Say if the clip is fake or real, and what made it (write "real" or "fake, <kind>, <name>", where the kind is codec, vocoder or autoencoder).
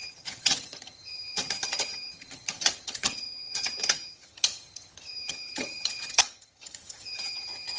fake, vocoder, HiFi-GAN